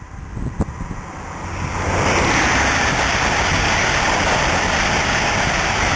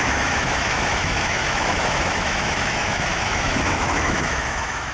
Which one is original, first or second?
first